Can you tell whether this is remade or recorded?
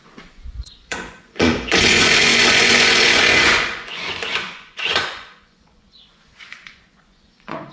remade